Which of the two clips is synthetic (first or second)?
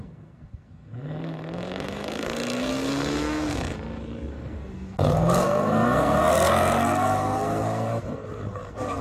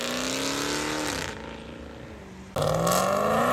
first